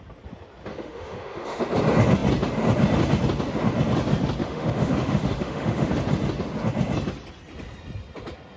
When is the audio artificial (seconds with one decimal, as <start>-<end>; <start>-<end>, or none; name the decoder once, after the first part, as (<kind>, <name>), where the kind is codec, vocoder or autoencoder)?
0.7-1.6 (autoencoder, DAC-VAE); 4.4-5.9